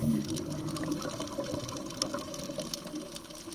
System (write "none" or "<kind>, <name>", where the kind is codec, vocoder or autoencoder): none